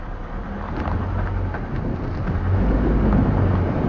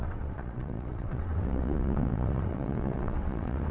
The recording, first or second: first